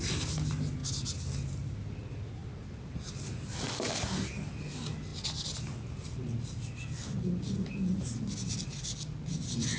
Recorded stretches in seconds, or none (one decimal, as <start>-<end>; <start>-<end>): 0.0-9.8